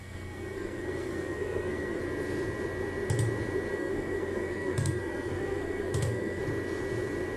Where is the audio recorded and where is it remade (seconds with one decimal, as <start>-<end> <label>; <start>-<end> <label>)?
0.0-2.0 remade; 2.0-3.7 recorded; 3.7-6.4 remade; 6.4-7.4 recorded